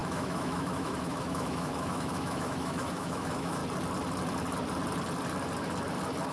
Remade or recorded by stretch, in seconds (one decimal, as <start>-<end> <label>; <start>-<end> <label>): 0.0-3.6 remade; 3.6-6.3 recorded